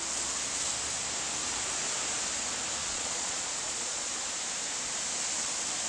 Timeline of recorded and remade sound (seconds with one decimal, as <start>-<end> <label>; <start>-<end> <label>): 0.0-2.8 recorded; 2.8-4.1 remade; 4.1-5.9 recorded